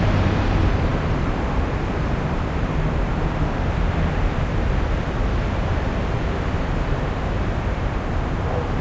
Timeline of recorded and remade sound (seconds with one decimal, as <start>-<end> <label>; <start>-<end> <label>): 0.0-8.8 remade